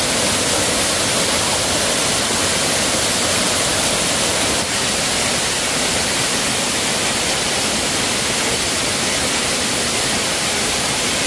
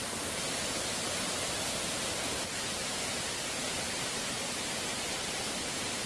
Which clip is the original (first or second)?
first